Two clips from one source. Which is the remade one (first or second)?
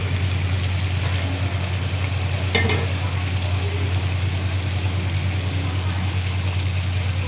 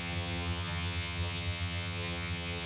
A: second